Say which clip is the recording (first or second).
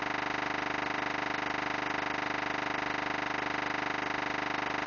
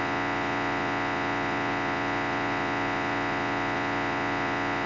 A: first